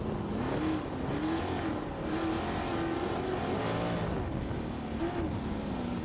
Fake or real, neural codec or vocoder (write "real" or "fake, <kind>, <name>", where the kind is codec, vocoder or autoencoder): real